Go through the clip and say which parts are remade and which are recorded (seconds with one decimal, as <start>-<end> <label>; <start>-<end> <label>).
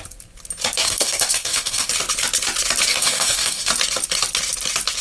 0.0-0.8 recorded; 0.8-1.9 remade; 1.9-2.9 recorded; 2.9-3.7 remade; 3.7-5.0 recorded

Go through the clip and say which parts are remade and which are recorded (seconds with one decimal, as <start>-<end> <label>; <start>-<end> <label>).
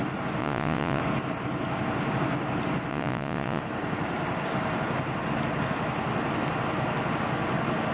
0.0-0.4 recorded; 0.4-1.0 remade; 1.0-2.9 recorded; 2.9-3.6 remade; 3.6-7.9 recorded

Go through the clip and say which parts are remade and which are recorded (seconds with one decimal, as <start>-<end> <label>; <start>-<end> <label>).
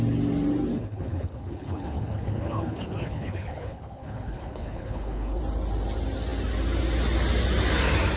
0.0-0.7 recorded; 0.7-5.4 remade; 5.4-8.2 recorded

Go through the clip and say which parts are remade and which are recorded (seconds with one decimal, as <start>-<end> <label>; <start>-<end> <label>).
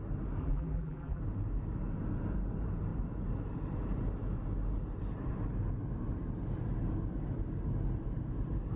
0.0-0.4 recorded; 0.4-1.2 remade; 1.2-8.8 recorded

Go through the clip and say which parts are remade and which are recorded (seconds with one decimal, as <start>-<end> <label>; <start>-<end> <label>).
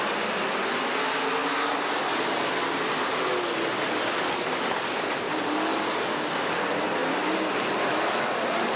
0.0-8.8 recorded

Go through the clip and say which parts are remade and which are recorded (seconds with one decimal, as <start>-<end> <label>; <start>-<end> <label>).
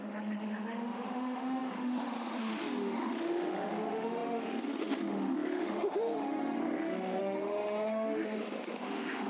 0.0-9.3 remade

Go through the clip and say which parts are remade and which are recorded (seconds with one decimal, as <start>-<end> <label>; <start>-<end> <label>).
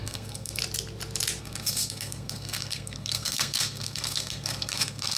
0.0-0.6 remade; 0.6-1.4 recorded; 1.4-5.2 remade